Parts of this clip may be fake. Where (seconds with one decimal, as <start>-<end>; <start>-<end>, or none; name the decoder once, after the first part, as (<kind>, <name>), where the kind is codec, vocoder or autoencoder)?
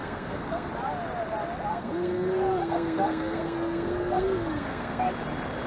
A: 0.0-0.7 (codec, SNAC); 1.7-5.1